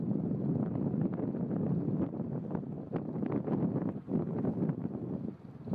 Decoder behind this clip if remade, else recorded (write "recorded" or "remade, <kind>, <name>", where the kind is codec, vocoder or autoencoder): recorded